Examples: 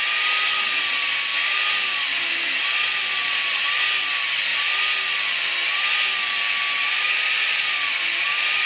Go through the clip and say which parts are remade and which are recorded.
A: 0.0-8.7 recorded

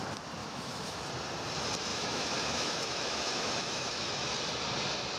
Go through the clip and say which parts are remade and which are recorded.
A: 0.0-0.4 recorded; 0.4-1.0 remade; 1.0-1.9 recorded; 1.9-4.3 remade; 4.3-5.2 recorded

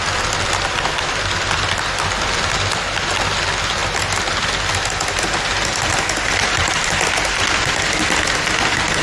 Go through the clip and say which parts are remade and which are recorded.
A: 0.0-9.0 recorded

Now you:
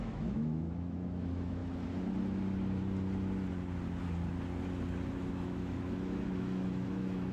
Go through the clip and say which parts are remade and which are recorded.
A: 0.0-1.6 remade; 1.6-5.1 recorded; 5.1-7.3 remade

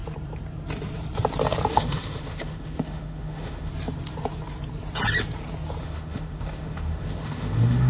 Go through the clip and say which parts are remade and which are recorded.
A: 0.0-1.7 recorded; 1.7-3.7 remade; 3.7-5.8 recorded; 5.8-7.9 remade

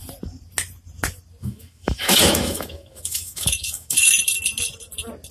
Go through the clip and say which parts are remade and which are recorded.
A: 0.0-1.4 recorded; 1.4-4.1 remade; 4.1-5.3 recorded

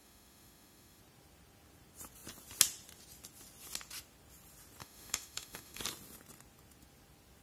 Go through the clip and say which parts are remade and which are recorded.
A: 0.0-1.0 remade; 1.0-4.8 recorded; 4.8-5.8 remade; 5.8-7.4 recorded

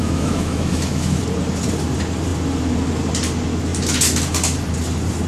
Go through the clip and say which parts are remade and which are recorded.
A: 0.0-1.2 remade; 1.2-5.3 recorded